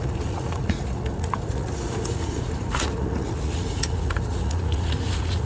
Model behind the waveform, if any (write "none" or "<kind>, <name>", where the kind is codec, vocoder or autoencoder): vocoder, Vocos